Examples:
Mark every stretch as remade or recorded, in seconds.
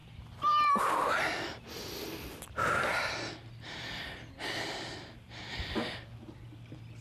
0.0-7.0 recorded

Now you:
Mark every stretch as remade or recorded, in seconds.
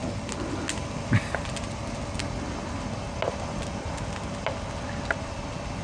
0.0-5.8 recorded